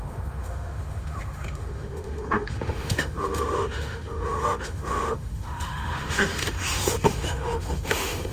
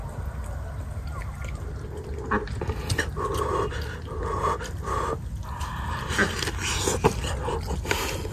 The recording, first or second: second